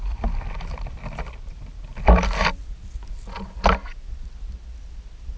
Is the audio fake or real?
real